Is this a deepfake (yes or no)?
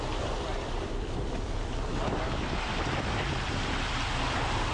no